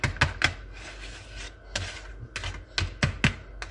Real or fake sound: real